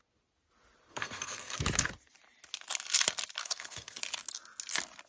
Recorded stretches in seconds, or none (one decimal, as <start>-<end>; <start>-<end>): 0.0-0.9; 1.6-3.4; 4.0-5.1